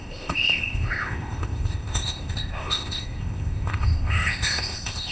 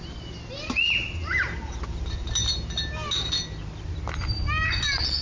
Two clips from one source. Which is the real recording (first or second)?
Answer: second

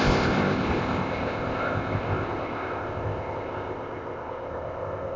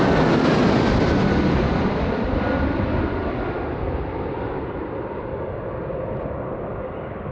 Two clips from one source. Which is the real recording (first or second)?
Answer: second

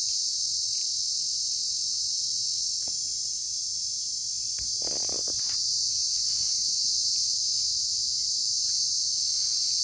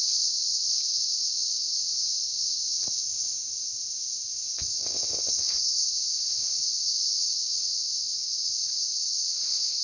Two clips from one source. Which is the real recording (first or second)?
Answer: first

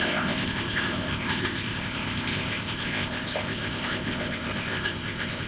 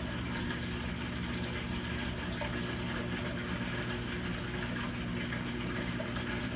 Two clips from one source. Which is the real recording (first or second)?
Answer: second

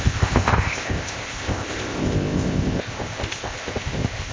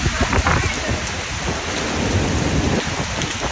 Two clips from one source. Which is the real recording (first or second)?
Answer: second